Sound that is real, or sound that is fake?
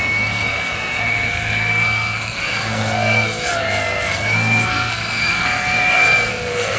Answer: fake